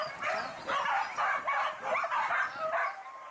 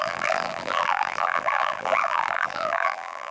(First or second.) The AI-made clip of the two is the second